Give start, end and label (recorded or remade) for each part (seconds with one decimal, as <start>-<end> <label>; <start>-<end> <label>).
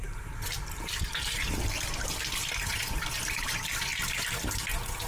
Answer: 0.0-5.1 recorded